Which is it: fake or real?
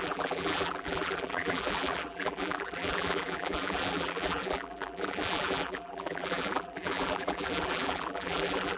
fake